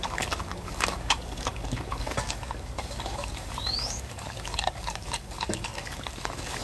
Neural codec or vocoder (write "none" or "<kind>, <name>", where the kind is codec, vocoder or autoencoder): codec, DAC